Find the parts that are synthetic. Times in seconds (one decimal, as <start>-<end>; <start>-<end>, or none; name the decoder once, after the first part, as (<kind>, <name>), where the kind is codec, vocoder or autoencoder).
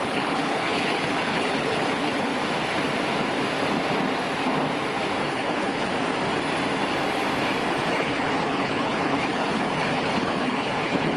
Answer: 0.0-2.3 (codec, HILCodec); 5.3-5.9; 7.7-11.2